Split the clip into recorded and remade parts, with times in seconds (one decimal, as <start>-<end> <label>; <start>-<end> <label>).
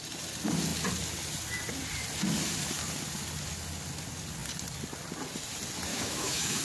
0.0-5.9 recorded; 5.9-6.6 remade